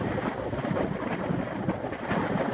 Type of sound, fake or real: real